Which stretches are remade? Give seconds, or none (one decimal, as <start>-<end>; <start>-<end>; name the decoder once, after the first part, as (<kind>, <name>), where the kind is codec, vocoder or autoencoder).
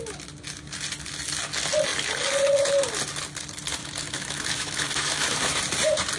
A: 3.8-5.6 (autoencoder, DAC-VAE)